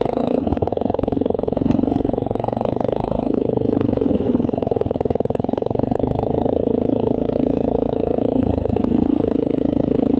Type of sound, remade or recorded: remade